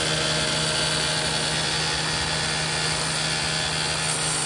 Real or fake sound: real